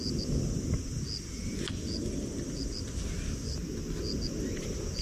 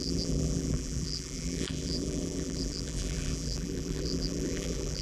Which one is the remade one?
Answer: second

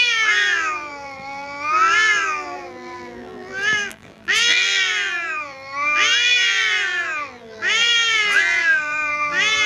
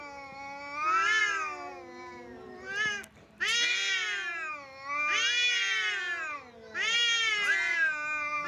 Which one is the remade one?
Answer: first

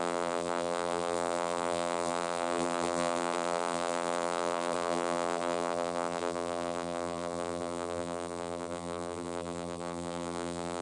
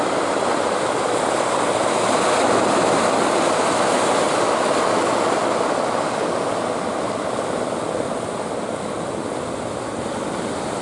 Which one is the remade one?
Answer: first